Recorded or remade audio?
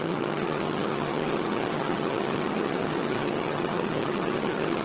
remade